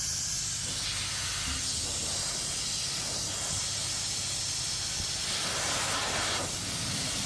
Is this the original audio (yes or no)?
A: yes